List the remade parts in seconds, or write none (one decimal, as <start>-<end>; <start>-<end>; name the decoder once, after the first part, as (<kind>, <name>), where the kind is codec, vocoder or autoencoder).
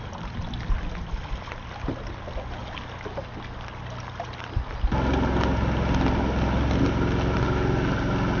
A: none